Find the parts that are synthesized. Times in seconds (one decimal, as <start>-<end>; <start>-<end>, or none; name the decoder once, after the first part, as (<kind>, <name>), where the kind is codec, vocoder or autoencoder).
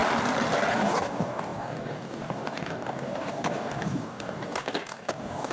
0.7-5.5 (codec, DAC)